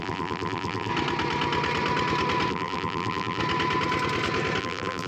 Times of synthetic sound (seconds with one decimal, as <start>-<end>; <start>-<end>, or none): 0.0-0.9; 2.5-3.4; 4.6-5.1